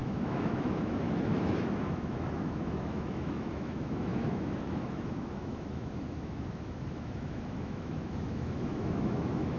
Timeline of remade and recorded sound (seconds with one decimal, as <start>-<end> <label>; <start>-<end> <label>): 0.0-9.6 remade